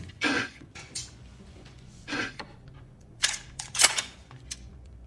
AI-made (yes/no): yes